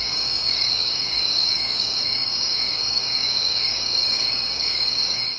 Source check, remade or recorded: remade